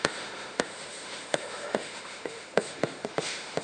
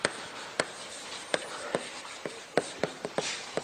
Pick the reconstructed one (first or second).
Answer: first